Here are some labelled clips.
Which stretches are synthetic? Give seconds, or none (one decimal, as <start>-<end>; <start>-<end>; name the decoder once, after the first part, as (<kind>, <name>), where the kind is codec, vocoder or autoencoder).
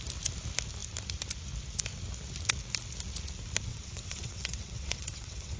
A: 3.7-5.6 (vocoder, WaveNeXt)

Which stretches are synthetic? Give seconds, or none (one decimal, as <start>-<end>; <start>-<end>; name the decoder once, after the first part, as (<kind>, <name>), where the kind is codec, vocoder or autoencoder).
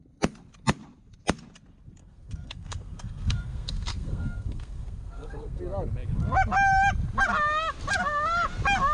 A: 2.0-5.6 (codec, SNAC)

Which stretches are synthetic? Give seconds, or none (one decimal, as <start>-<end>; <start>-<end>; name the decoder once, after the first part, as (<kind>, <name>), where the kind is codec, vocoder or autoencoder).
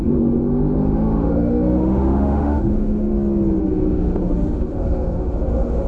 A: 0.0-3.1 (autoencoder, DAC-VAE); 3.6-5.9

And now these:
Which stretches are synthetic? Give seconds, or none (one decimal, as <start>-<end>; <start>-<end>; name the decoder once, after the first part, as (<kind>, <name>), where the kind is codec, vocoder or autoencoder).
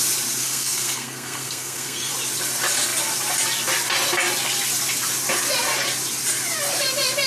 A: 0.4-2.1 (codec, SNAC)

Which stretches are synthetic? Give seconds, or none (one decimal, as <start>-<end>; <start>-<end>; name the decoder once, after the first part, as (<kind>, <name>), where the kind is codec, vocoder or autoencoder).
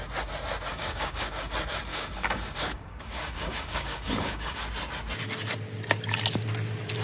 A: 0.7-1.5 (codec, DAC); 1.9-4.7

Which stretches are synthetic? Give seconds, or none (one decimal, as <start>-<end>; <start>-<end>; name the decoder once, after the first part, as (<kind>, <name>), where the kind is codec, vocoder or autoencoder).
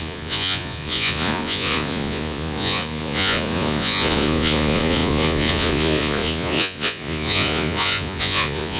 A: 0.0-8.8 (vocoder, Vocos)